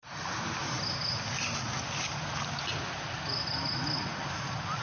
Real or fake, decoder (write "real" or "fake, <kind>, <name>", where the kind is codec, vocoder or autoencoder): real